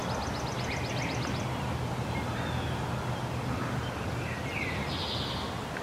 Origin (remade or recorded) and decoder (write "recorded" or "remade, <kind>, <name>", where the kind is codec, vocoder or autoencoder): recorded